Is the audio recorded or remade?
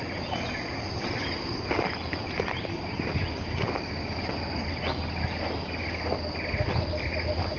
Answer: recorded